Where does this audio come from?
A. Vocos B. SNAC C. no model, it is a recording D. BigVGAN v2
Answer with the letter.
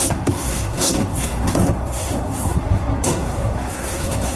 B